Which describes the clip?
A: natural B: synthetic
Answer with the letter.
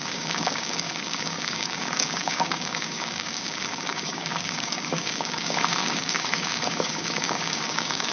B